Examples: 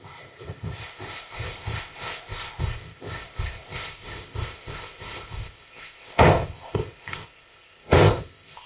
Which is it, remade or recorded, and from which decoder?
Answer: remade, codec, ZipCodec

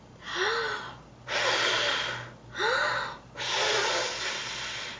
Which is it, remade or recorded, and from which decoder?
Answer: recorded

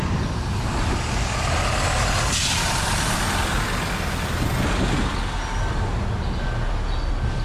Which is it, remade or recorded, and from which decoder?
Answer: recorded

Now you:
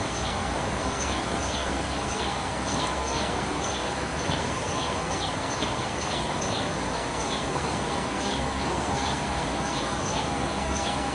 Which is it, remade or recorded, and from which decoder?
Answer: remade, codec, SNAC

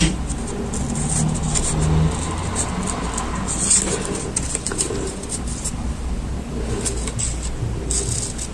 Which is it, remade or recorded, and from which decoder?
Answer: recorded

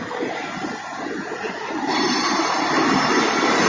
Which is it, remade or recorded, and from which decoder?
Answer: recorded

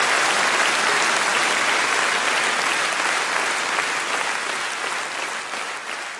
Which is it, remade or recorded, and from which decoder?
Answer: recorded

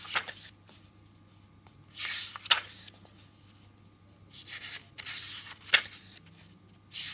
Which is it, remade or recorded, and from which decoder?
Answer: recorded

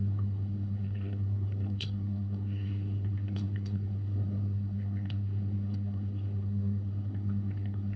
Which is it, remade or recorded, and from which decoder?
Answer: remade, codec, SNAC